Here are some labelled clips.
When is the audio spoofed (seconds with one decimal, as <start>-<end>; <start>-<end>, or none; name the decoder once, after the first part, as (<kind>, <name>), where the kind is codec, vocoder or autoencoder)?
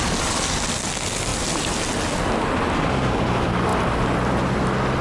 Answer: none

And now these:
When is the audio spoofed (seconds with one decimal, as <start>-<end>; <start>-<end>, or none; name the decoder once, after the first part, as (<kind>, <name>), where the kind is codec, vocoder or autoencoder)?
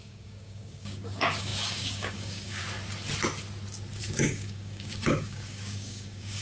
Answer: 0.0-2.6 (codec, DAC); 4.0-6.4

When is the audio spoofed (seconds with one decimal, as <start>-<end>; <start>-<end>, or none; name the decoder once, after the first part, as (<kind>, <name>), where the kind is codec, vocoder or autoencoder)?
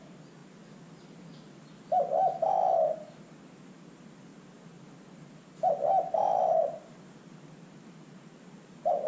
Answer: none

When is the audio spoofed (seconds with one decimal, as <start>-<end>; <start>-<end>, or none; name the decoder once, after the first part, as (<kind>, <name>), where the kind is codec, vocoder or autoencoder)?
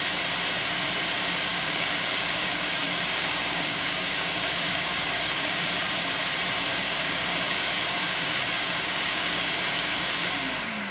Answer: 1.5-6.2 (codec, DAC); 6.7-10.3